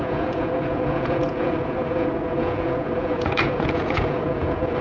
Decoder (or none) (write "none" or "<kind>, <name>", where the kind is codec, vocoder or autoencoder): vocoder, Vocos